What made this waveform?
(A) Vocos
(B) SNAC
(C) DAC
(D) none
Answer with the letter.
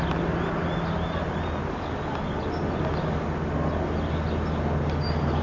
D